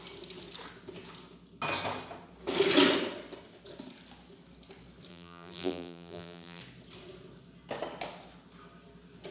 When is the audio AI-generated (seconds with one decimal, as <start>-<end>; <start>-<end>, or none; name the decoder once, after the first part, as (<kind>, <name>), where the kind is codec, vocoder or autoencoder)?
5.1-6.6 (vocoder, BigVGAN v2)